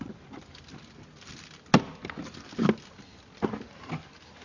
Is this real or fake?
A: real